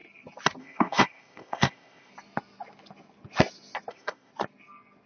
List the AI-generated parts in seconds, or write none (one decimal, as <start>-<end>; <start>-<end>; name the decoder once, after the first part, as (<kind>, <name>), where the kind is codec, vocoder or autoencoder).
0.6-2.1 (codec, ZipCodec); 3.9-4.3

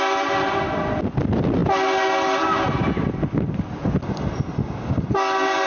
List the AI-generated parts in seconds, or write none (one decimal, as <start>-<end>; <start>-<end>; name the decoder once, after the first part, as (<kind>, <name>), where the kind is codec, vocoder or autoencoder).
none

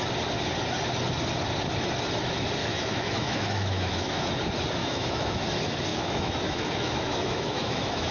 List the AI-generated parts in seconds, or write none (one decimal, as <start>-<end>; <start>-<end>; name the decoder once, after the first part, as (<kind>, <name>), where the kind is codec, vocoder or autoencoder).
2.6-4.3 (autoencoder, DAC-VAE); 4.8-5.4; 5.9-8.1

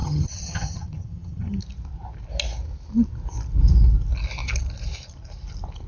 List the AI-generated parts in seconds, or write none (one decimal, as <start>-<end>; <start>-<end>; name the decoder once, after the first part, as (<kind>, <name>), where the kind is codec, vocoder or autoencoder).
0.0-1.6 (vocoder, HiFi-GAN)